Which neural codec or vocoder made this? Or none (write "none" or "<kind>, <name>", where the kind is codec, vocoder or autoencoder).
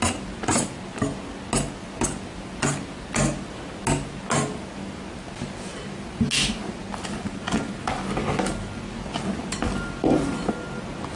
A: none